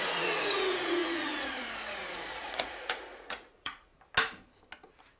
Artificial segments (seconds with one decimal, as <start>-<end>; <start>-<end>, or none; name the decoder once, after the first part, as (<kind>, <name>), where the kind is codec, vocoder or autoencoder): 0.0-3.9 (vocoder, Vocos)